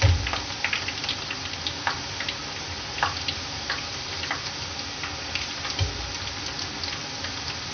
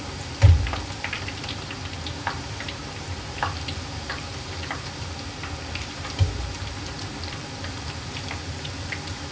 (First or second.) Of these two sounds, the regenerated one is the second